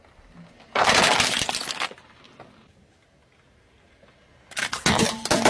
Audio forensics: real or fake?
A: real